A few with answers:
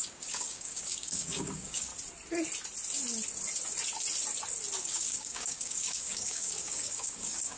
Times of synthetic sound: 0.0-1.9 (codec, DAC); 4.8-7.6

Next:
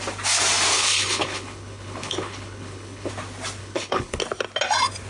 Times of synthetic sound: 0.7-3.1 (codec, HILCodec); 3.6-4.2